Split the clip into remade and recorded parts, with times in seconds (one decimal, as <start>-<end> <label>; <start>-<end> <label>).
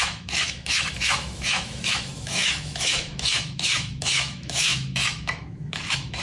0.0-6.2 remade